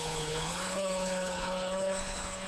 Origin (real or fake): fake